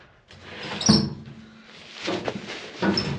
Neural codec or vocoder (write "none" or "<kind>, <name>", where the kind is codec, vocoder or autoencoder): none